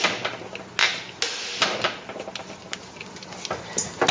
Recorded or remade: recorded